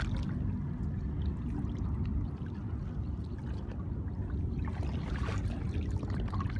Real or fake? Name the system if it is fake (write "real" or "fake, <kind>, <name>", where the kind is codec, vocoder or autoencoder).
real